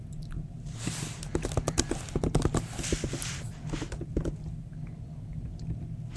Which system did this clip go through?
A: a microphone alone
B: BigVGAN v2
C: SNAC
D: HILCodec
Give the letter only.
A